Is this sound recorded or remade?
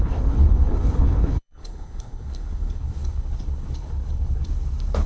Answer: remade